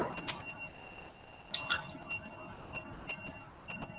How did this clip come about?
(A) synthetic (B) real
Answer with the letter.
B